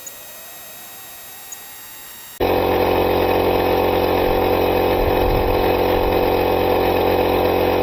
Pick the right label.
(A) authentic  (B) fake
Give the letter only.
A